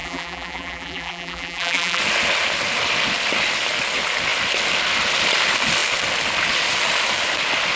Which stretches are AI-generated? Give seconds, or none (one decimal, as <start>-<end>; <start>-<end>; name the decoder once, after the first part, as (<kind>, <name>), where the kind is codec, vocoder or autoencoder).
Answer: 0.0-2.0 (vocoder, BigVGAN v2)